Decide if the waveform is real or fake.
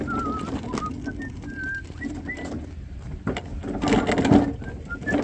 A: real